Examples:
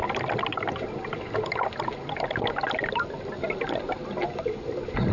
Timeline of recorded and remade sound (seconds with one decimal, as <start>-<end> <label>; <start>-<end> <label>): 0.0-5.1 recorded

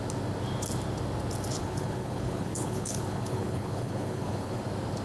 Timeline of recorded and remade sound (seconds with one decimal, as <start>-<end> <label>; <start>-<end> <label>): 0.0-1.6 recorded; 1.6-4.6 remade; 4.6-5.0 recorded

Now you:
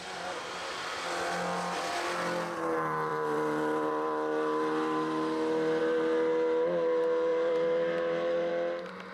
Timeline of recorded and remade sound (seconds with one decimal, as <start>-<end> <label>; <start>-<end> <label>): 0.0-3.1 recorded; 3.1-3.9 remade; 3.9-7.3 recorded; 7.3-8.5 remade; 8.5-9.1 recorded